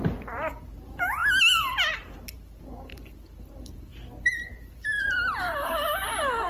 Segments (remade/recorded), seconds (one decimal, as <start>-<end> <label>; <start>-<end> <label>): 0.0-1.2 remade; 1.2-1.9 recorded; 1.9-3.9 remade; 3.9-4.5 recorded; 4.5-6.5 remade